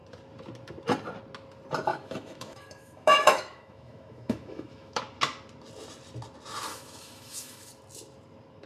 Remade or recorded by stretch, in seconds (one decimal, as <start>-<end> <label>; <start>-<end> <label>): 0.0-1.9 recorded; 1.9-5.0 remade; 5.0-6.7 recorded; 6.7-7.7 remade; 7.7-8.7 recorded

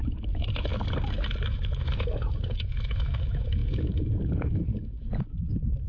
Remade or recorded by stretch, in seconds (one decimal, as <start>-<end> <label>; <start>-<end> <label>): 0.0-0.7 remade; 0.7-1.5 recorded; 1.5-5.9 remade

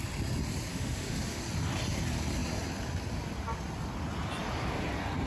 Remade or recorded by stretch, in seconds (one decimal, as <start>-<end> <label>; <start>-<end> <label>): 0.0-0.7 recorded; 0.7-1.4 remade; 1.4-5.3 recorded